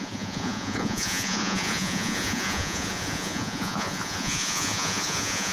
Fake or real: fake